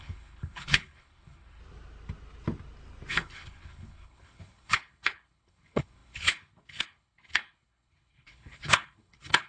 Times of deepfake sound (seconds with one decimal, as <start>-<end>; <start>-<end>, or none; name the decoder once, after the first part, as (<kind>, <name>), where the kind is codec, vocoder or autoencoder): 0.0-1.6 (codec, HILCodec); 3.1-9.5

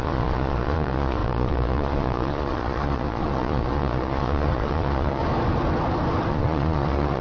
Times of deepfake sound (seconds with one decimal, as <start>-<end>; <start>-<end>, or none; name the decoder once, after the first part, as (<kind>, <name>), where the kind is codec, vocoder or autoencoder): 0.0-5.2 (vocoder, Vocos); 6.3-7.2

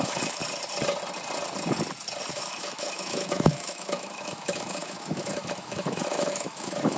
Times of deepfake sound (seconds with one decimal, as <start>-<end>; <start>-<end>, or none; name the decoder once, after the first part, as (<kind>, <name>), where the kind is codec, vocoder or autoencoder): 0.0-0.4 (autoencoder, DAC-VAE); 2.3-7.0